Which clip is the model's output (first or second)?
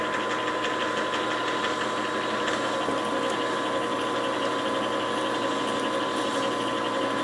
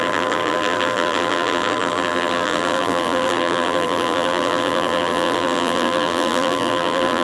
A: second